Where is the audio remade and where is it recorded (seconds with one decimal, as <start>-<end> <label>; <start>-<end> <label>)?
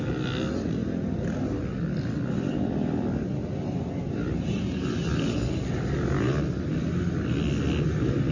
0.0-8.3 recorded